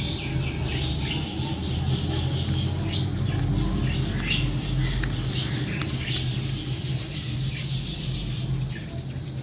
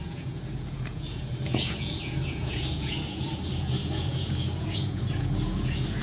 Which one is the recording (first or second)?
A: first